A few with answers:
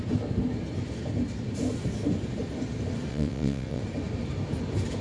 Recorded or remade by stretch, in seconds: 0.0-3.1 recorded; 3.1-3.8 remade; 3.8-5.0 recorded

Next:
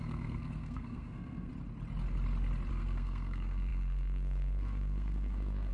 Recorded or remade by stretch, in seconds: 0.0-1.5 remade; 1.5-2.7 recorded; 2.7-5.7 remade

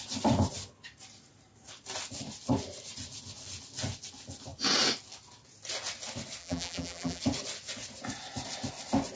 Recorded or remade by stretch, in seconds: 0.0-6.4 recorded; 6.4-7.2 remade; 7.2-9.2 recorded

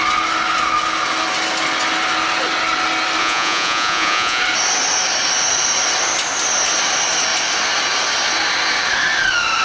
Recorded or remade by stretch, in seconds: 0.0-3.2 recorded; 3.2-4.4 remade; 4.4-9.6 recorded

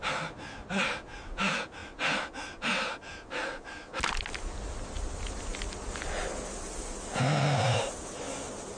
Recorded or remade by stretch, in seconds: 0.0-8.8 recorded

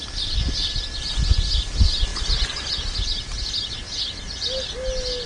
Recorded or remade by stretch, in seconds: 0.0-5.3 recorded

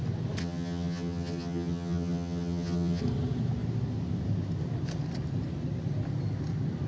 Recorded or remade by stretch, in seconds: 0.0-0.4 recorded; 0.4-3.0 remade; 3.0-6.9 recorded